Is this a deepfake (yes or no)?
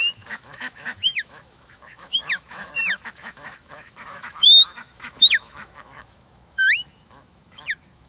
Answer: yes